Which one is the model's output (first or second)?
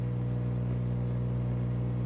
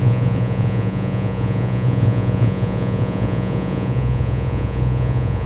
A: second